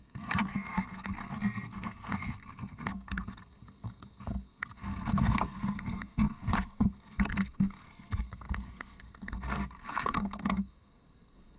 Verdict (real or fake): fake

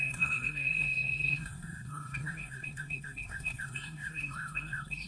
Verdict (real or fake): fake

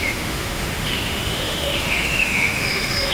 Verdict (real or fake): fake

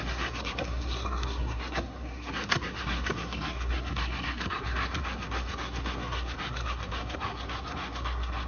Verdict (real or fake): fake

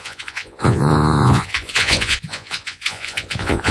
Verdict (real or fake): fake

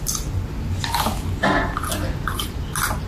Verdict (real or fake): real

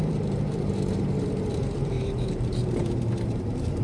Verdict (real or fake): fake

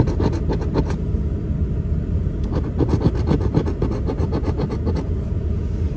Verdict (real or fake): real